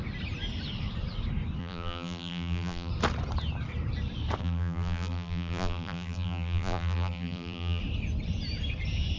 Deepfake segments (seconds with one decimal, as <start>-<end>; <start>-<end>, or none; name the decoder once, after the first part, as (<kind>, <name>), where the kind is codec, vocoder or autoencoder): 1.6-2.9 (vocoder, BigVGAN v2); 4.4-7.8